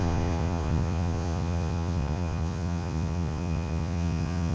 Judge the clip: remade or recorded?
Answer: remade